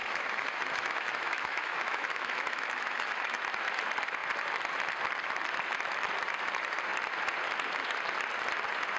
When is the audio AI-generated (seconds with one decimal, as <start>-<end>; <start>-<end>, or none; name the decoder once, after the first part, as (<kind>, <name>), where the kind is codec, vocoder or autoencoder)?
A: 0.0-3.4 (autoencoder, DAC-VAE)